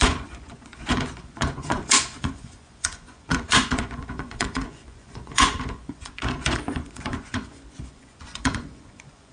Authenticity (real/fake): fake